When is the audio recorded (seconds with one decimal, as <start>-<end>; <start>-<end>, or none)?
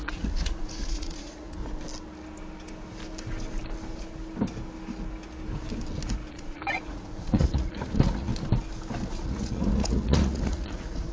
1.6-6.3; 8.3-9.1